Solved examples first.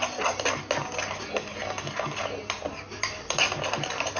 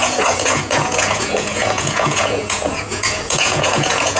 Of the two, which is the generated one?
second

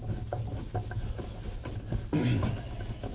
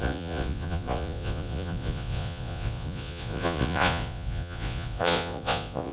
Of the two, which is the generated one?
second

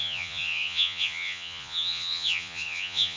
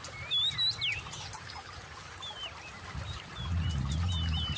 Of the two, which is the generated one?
first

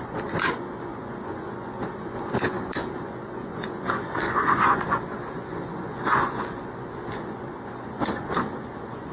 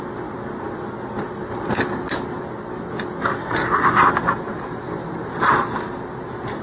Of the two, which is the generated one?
first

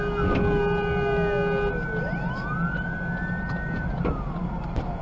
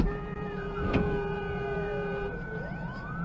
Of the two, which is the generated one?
second